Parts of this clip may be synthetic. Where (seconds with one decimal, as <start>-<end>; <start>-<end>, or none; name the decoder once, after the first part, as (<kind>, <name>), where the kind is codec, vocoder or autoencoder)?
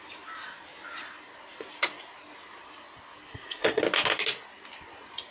3.3-3.8 (codec, SNAC)